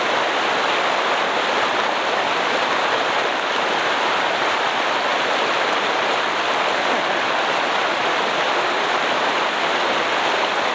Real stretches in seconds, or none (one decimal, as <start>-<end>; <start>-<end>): 0.0-10.7

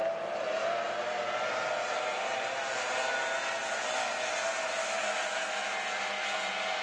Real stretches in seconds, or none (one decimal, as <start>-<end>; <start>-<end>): 0.0-4.8; 5.7-6.8